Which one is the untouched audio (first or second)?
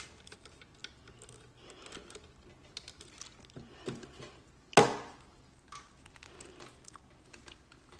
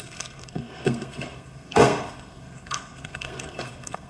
first